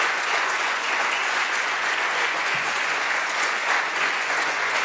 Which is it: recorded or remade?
remade